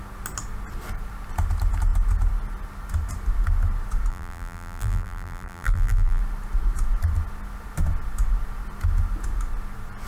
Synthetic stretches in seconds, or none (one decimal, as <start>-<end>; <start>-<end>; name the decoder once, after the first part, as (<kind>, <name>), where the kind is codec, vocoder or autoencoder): 4.1-6.2 (vocoder, BigVGAN v2)